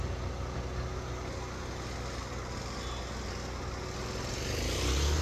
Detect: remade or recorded recorded